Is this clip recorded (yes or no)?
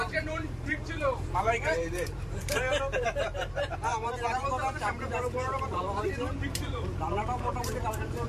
no